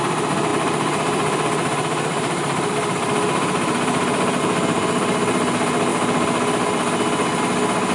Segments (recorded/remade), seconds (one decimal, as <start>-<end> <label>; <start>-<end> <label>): 0.0-0.5 recorded; 0.5-4.4 remade; 4.4-7.9 recorded